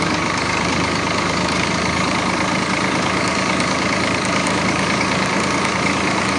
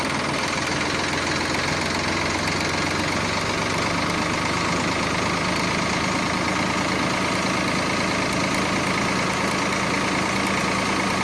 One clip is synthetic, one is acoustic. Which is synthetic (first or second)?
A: first